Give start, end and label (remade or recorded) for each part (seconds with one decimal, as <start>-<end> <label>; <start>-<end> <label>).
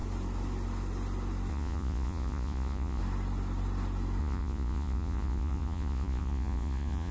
0.0-1.5 recorded; 1.5-3.0 remade; 3.0-4.2 recorded; 4.2-7.1 remade